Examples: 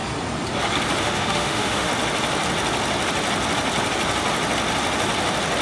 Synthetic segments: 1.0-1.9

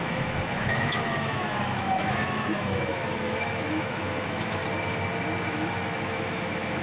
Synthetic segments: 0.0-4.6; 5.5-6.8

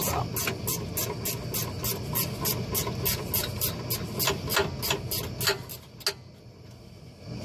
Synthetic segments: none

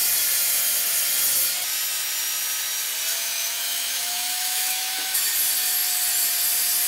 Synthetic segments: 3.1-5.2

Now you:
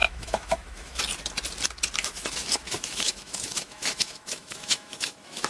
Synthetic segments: 0.0-1.0; 2.0-5.5

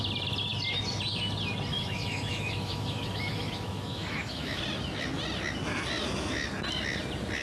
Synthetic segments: 1.7-4.6